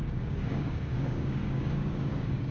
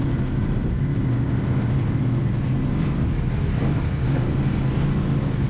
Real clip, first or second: second